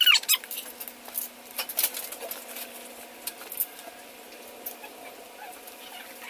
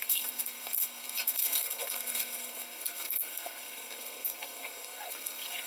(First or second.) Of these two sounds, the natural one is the first